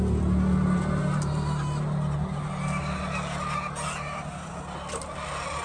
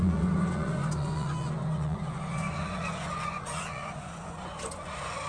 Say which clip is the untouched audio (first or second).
first